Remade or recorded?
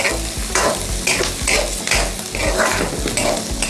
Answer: recorded